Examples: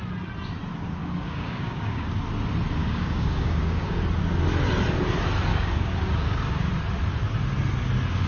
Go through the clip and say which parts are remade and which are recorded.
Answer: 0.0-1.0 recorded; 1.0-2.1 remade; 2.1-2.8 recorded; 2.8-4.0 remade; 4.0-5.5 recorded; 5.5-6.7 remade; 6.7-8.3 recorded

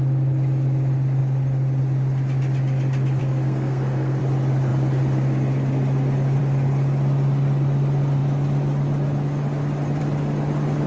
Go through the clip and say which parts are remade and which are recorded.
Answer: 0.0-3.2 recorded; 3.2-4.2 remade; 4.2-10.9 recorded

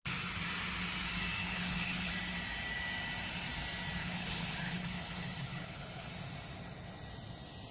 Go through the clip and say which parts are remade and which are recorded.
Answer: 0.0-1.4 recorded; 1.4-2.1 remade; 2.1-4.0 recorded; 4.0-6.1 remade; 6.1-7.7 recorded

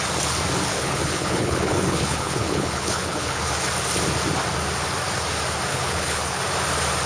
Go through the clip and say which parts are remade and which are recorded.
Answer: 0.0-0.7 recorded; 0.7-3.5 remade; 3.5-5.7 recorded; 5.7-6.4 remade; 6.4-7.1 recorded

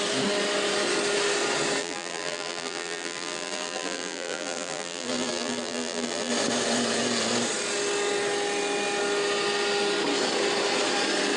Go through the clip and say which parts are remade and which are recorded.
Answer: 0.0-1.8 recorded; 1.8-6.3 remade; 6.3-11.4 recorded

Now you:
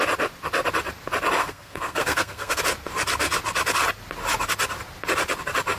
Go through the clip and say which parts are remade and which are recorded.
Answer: 0.0-1.4 recorded; 1.4-2.6 remade; 2.6-5.8 recorded

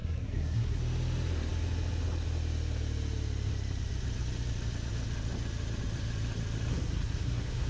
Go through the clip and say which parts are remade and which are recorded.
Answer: 0.0-0.8 remade; 0.8-6.7 recorded; 6.7-7.7 remade